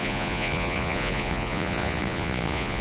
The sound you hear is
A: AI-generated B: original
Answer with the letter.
A